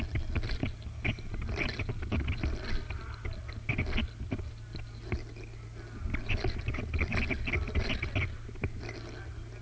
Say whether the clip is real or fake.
real